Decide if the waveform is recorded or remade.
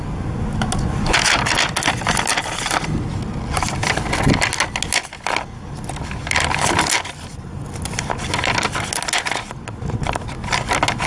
recorded